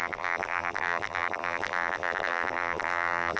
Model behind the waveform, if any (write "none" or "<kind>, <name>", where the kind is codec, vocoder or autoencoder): vocoder, BigVGAN v2